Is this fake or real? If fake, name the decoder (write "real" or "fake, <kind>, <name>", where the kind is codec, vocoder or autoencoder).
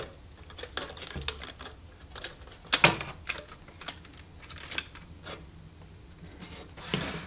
real